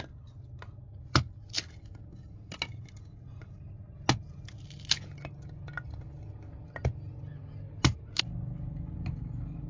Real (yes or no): yes